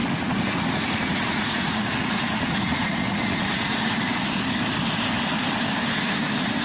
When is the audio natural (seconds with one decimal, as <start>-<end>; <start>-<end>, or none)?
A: 4.0-6.6